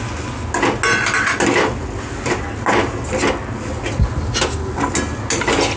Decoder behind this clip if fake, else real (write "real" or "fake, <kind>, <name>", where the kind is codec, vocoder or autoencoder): real